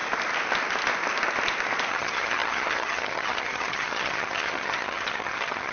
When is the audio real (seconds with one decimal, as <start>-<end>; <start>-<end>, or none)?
0.0-1.9